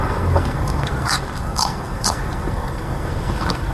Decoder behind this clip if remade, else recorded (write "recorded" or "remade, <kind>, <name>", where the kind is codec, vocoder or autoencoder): remade, codec, SNAC